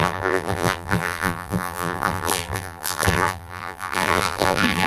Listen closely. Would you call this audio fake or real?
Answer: fake